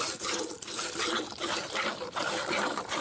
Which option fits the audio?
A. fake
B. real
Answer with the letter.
B